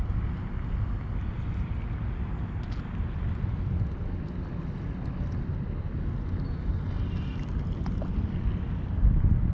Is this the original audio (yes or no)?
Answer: yes